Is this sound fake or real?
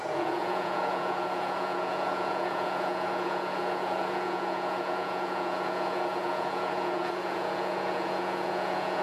fake